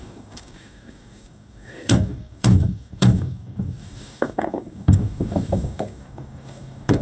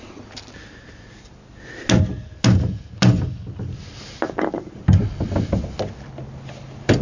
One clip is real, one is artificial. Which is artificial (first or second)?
first